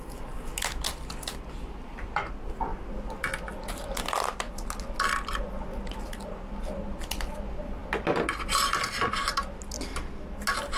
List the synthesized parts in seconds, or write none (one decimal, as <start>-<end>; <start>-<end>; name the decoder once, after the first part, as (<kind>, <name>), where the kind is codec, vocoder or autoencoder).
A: none